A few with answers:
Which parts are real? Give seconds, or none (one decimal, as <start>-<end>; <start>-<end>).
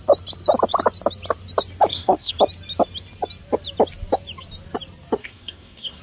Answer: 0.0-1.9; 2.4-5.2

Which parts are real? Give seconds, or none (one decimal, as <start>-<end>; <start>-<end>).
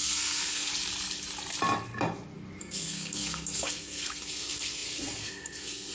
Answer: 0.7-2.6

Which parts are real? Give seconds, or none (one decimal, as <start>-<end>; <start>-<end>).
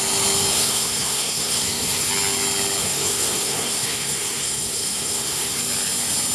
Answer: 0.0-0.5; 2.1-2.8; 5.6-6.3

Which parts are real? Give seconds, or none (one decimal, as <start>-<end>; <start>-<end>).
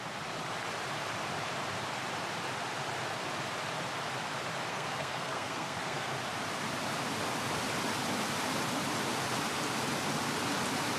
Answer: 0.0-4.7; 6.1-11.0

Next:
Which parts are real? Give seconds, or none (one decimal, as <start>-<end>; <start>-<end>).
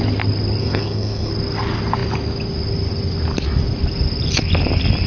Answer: 0.0-0.6; 1.3-5.1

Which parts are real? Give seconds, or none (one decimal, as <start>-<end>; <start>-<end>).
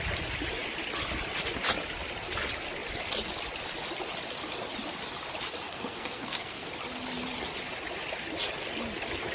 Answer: 0.0-5.7; 6.7-9.3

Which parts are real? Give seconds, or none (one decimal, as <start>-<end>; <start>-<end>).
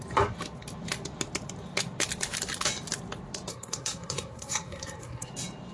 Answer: 0.0-3.5; 5.3-5.7